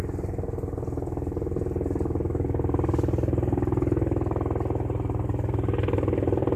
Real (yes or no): yes